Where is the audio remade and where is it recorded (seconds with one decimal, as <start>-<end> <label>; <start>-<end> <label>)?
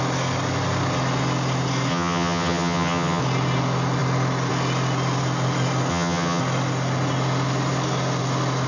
0.0-1.9 recorded; 1.9-3.2 remade; 3.2-5.9 recorded; 5.9-6.4 remade; 6.4-8.7 recorded